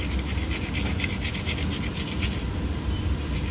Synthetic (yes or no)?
yes